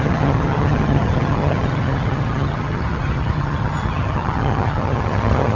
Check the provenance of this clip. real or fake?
fake